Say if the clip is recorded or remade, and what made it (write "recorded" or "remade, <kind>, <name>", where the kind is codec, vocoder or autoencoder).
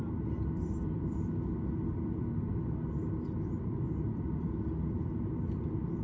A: recorded